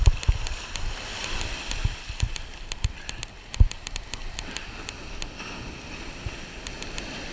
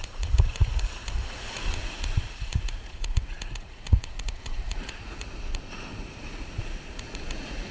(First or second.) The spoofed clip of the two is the second